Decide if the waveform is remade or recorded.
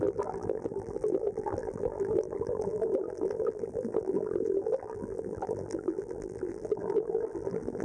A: remade